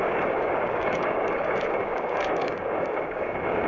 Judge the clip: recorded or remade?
remade